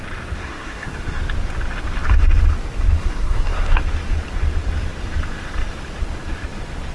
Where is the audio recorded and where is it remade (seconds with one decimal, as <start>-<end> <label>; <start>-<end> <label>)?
0.0-0.4 recorded; 0.4-1.2 remade; 1.2-3.0 recorded; 3.0-3.8 remade; 3.8-6.9 recorded